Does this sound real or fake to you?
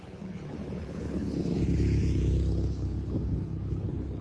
fake